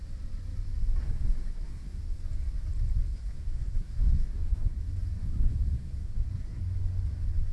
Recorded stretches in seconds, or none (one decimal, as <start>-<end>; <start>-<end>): 0.0-1.0; 2.0-3.1; 4.8-5.2; 6.6-7.5